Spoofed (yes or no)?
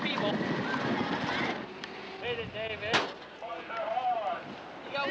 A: no